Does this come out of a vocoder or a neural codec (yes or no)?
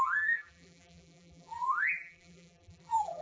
yes